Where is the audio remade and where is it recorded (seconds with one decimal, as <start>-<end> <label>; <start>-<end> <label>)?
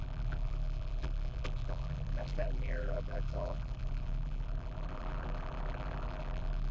0.0-6.7 remade